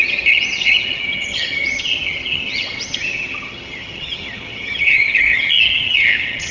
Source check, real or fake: fake